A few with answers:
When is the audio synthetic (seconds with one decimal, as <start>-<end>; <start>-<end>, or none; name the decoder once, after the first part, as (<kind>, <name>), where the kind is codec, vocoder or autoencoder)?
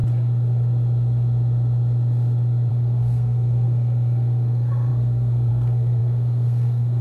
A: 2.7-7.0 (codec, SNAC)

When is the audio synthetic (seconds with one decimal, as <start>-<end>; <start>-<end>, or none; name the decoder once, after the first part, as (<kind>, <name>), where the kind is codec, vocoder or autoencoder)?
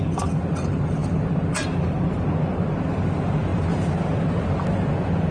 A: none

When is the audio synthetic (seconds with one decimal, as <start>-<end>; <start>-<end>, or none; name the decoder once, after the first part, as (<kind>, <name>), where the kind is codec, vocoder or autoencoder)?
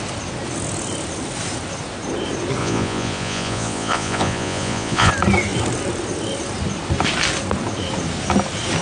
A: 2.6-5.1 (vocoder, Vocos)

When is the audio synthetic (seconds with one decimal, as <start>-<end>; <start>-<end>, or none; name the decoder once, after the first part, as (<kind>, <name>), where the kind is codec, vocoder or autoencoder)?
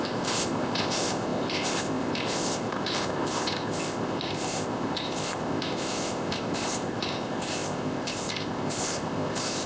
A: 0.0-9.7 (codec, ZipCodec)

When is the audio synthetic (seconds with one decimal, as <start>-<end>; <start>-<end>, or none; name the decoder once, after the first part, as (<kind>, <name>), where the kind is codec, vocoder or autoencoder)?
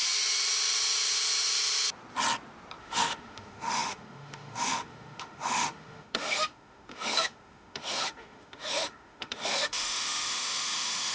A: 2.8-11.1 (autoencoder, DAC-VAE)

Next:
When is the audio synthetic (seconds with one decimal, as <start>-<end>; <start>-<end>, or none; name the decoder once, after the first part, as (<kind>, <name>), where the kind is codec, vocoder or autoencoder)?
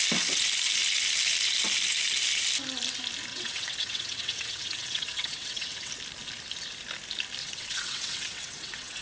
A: 3.3-5.9 (vocoder, WaveNeXt); 7.4-9.0